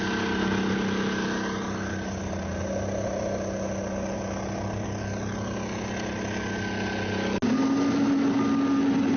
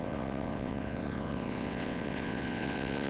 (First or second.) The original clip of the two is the first